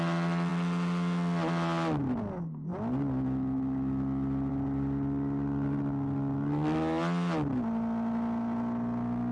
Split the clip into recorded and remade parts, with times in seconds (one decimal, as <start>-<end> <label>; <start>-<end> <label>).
0.0-9.3 recorded

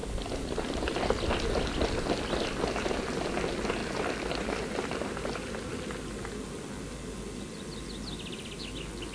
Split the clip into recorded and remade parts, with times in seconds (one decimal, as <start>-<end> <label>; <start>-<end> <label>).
0.0-1.0 remade; 1.0-3.8 recorded; 3.8-5.1 remade; 5.1-9.1 recorded

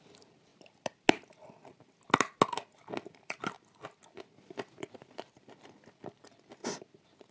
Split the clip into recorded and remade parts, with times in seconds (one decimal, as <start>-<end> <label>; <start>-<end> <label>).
0.0-0.5 remade; 0.5-4.9 recorded; 4.9-6.6 remade; 6.6-7.3 recorded

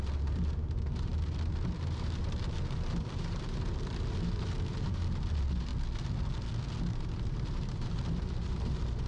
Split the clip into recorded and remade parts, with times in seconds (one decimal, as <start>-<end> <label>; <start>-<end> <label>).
0.0-5.7 remade; 5.7-6.9 recorded; 6.9-9.1 remade